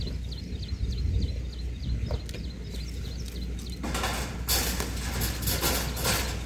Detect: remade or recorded recorded